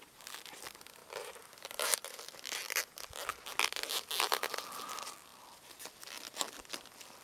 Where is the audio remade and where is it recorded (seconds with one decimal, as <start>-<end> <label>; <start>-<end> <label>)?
0.0-1.0 recorded; 1.0-2.3 remade; 2.3-7.2 recorded